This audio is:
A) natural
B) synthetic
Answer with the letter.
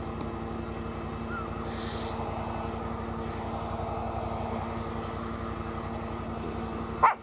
A